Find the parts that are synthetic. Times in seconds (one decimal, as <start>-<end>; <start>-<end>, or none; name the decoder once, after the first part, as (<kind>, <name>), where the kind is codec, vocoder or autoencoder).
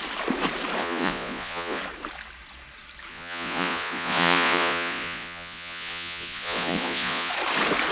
0.8-1.8 (vocoder, Vocos); 3.1-7.3